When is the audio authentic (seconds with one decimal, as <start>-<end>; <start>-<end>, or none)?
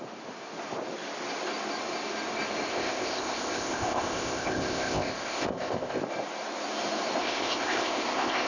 0.0-2.7; 6.0-7.2